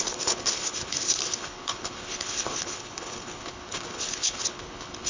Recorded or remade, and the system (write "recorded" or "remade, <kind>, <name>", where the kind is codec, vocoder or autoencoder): remade, codec, HILCodec